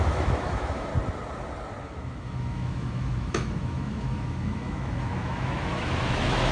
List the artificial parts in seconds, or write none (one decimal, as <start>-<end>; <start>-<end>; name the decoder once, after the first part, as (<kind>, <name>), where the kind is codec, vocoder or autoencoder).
0.0-0.9 (autoencoder, DAC-VAE); 1.8-6.5